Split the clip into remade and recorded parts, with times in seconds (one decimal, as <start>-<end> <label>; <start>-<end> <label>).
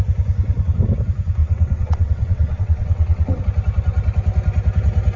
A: 0.0-1.4 recorded; 1.4-3.4 remade; 3.4-5.2 recorded